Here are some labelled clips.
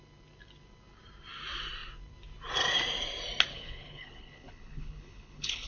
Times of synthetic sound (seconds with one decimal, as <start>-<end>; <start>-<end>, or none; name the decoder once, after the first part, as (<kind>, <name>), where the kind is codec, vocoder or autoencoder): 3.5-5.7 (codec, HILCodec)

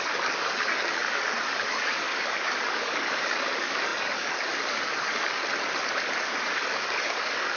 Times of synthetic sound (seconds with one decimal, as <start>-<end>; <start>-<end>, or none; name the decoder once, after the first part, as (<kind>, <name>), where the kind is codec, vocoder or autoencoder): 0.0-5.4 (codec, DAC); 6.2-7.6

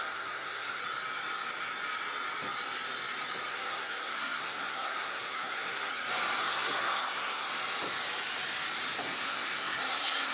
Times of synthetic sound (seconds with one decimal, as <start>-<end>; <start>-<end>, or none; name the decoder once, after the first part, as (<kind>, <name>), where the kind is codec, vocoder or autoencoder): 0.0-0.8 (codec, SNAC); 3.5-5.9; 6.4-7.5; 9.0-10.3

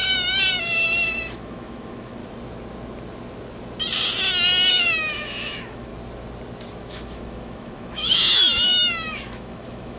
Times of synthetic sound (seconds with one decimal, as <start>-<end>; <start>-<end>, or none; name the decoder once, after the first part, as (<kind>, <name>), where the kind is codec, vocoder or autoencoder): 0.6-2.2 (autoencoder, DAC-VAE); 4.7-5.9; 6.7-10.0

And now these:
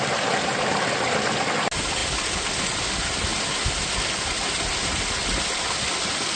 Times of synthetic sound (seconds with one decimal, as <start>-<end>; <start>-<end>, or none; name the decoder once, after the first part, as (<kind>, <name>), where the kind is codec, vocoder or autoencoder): none

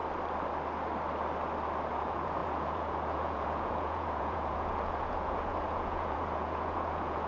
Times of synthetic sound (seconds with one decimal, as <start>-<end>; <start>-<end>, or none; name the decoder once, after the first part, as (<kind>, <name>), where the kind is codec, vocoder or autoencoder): 1.9-7.3 (vocoder, Vocos)

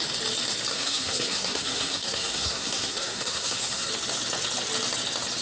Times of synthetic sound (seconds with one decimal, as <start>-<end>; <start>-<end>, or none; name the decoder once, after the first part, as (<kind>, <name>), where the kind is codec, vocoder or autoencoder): 0.7-3.9 (codec, SNAC)